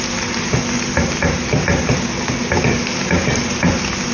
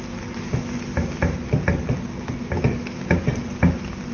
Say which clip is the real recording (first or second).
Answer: second